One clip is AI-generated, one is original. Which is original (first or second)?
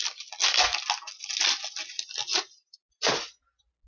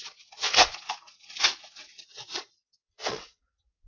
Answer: first